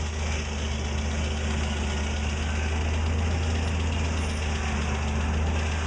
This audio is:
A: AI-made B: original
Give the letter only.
B